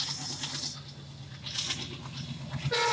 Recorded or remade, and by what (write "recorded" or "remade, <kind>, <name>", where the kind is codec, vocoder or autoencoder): recorded